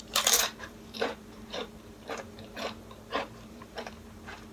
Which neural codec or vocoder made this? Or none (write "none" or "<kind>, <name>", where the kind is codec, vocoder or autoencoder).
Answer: vocoder, BigVGAN v2